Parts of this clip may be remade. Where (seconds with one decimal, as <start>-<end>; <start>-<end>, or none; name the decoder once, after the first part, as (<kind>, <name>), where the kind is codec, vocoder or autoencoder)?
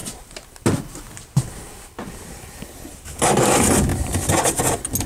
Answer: none